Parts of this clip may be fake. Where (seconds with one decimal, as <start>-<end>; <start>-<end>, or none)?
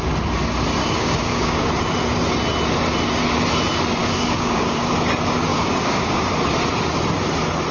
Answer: 0.8-1.7; 4.0-4.9; 5.5-6.3